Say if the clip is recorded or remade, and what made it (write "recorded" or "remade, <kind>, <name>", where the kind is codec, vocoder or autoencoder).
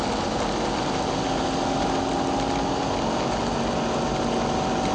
recorded